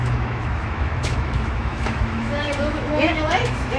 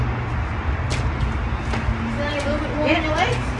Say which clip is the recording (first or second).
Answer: second